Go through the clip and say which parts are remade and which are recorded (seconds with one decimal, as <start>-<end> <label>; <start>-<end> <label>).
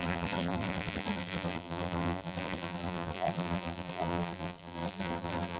0.0-5.6 remade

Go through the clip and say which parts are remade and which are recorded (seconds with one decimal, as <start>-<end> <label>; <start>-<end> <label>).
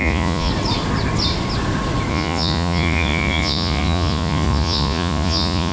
0.0-0.5 remade; 0.5-2.1 recorded; 2.1-5.7 remade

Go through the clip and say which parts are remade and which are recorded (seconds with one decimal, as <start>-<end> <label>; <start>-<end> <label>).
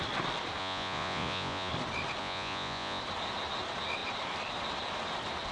0.0-0.6 recorded; 0.6-1.7 remade; 1.7-2.2 recorded; 2.2-3.0 remade; 3.0-5.5 recorded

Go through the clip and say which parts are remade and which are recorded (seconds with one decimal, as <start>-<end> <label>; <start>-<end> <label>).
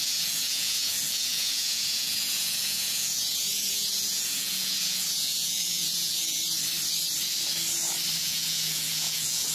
0.0-6.4 remade; 6.4-8.2 recorded; 8.2-9.5 remade